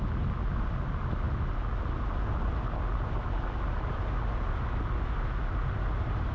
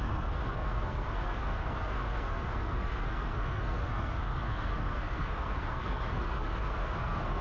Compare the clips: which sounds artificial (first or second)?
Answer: second